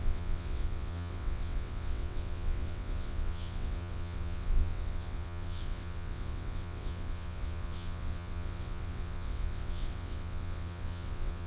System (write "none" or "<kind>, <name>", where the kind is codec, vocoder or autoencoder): vocoder, WaveNeXt